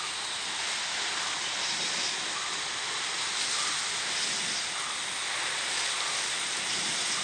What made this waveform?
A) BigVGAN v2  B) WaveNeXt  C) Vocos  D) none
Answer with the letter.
D